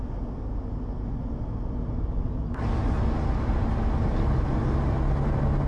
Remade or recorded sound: recorded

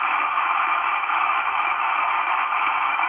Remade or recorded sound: remade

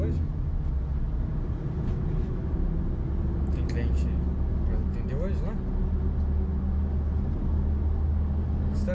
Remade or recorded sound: recorded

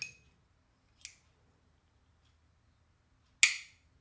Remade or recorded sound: recorded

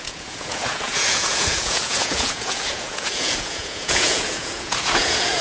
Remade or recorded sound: remade